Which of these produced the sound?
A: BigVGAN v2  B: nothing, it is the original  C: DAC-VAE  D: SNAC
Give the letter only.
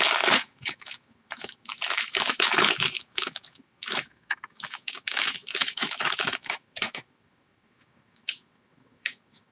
C